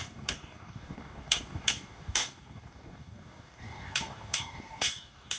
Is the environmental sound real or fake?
fake